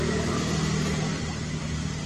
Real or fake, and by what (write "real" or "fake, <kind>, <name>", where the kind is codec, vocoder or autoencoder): fake, vocoder, BigVGAN v2